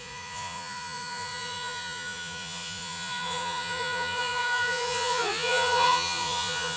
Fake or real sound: fake